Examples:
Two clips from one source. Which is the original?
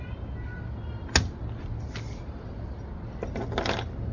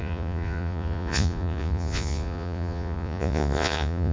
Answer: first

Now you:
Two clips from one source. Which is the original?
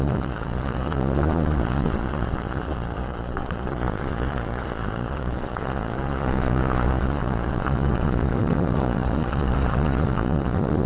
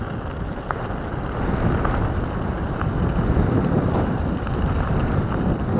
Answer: second